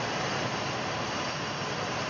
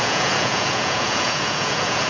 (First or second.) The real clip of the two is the first